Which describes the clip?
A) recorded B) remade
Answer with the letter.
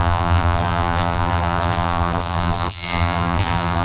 B